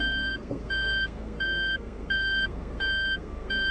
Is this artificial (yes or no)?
yes